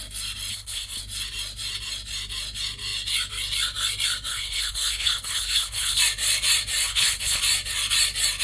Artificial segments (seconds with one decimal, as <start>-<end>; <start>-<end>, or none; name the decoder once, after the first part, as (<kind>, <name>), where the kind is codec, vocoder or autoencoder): 0.5-1.0 (codec, HILCodec); 4.3-6.0; 6.8-7.4